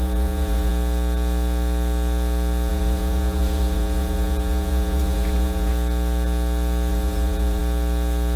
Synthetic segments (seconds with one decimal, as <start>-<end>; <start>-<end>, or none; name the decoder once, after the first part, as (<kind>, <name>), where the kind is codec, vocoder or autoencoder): 0.0-0.7 (vocoder, Vocos); 2.7-5.7; 6.9-7.6